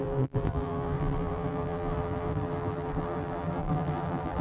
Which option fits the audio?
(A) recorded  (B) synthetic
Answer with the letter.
B